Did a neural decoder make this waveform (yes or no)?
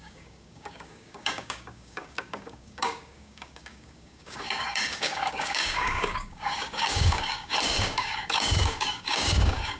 yes